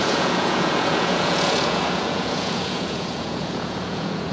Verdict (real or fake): fake